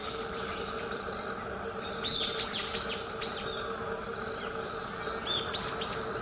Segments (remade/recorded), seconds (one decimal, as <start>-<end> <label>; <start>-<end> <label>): 0.0-2.5 remade; 2.5-4.1 recorded; 4.1-4.8 remade; 4.8-6.2 recorded